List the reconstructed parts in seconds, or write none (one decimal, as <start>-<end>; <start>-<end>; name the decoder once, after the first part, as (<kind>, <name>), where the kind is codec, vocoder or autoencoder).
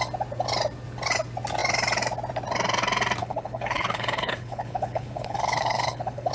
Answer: 3.2-6.3 (codec, HILCodec)